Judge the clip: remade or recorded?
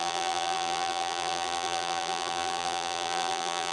remade